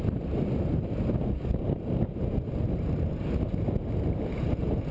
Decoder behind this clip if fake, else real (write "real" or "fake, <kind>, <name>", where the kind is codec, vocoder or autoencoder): real